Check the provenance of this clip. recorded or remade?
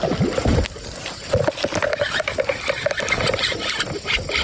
recorded